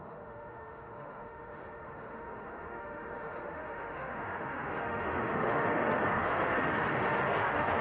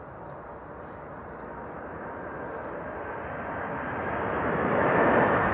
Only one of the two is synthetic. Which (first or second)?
first